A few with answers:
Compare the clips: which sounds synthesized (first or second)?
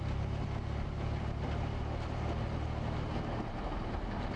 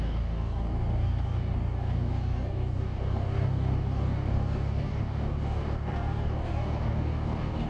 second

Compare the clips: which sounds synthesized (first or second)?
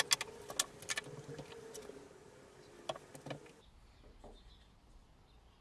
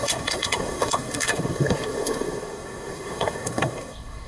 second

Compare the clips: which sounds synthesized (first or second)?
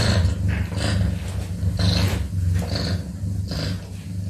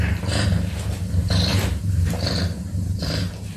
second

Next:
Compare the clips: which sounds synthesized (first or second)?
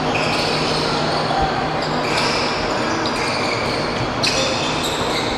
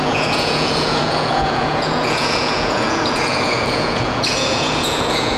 second